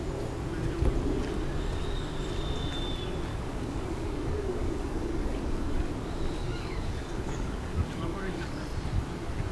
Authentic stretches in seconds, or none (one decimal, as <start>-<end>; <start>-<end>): 0.0-3.3; 5.9-6.4; 8.6-9.5

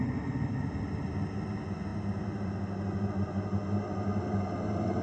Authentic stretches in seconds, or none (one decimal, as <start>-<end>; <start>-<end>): 0.0-5.0

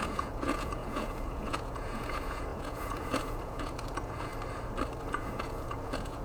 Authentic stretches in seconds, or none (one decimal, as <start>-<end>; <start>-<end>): 4.3-5.1

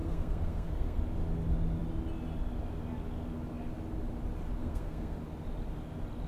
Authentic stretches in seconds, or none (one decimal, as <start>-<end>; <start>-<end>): 1.0-4.6; 5.2-6.3

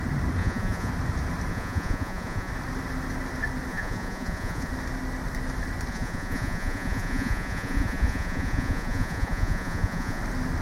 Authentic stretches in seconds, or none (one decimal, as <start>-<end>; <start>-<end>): 0.0-0.4; 0.9-1.5; 2.5-3.7; 4.7-5.9; 10.2-10.6

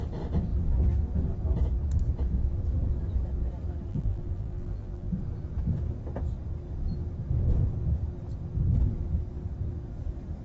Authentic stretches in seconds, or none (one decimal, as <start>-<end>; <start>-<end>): 0.0-3.9; 5.1-10.4

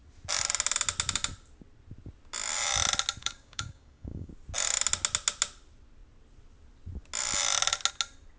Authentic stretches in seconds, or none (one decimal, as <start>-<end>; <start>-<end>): 0.0-3.2; 4.3-8.4

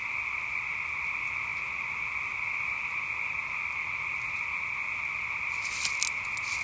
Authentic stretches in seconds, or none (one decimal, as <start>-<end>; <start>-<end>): 0.0-6.6